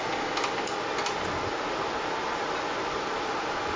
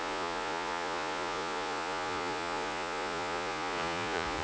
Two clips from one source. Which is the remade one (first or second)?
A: second